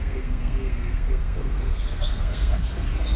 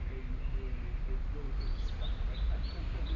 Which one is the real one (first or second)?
second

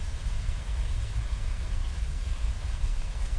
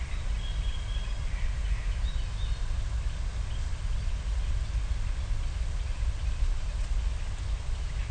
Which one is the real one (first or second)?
second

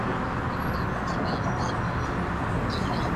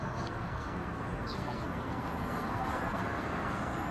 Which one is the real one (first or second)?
first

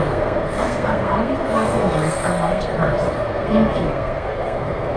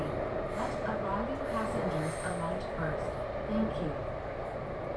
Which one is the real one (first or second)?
second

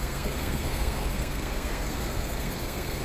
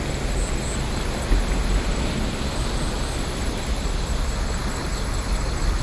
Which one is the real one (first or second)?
second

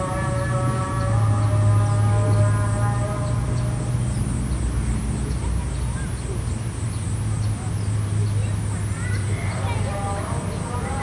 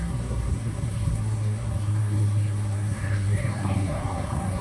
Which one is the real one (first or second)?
first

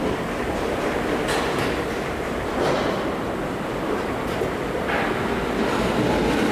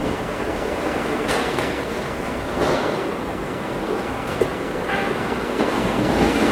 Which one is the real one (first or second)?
first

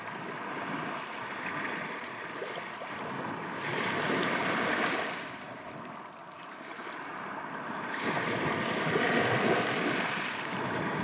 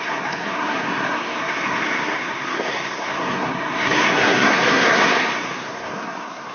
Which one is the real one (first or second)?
first